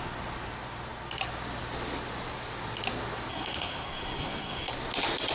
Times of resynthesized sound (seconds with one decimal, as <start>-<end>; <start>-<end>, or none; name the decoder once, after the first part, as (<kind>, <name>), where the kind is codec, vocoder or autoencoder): 3.3-4.7 (codec, SNAC)